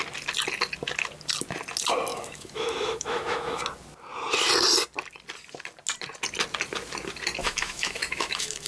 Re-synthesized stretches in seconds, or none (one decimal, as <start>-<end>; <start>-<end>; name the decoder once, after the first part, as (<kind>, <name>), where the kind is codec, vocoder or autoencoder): 2.1-3.6 (autoencoder, DAC-VAE); 7.4-8.7